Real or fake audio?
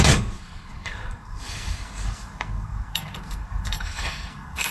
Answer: fake